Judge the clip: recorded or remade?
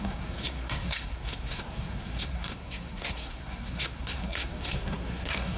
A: remade